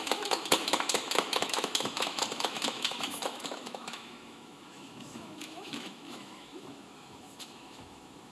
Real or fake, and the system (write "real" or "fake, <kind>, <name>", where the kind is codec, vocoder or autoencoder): fake, autoencoder, DAC-VAE